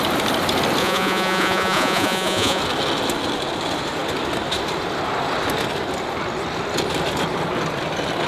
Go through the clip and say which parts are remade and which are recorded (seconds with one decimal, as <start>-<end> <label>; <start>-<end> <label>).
0.0-0.8 recorded; 0.8-2.6 remade; 2.6-8.3 recorded